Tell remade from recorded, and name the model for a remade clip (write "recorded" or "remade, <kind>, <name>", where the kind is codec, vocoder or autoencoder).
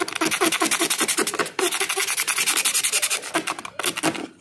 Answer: recorded